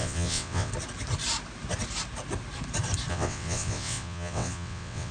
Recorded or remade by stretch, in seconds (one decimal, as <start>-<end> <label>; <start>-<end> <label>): 0.0-0.7 remade; 0.7-3.1 recorded; 3.1-5.1 remade